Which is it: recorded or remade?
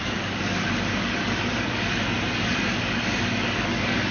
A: remade